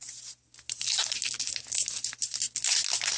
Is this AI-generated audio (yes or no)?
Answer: no